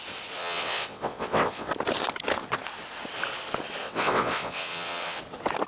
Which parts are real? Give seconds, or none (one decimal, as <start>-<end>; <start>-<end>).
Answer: 0.0-0.4; 1.7-3.8; 5.2-5.7